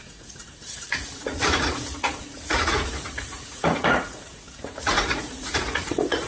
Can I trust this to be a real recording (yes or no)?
no